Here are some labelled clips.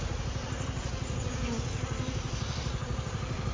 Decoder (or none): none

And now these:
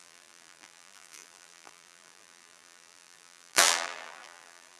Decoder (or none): vocoder, BigVGAN v2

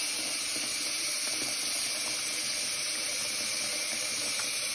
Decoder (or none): vocoder, BigVGAN v2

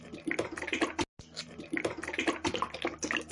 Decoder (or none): none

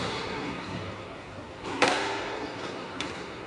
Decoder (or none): codec, SNAC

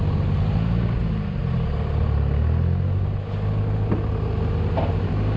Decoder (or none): none